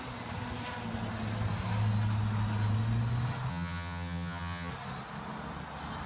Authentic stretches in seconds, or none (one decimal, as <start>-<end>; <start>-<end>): 0.0-3.5; 4.7-6.1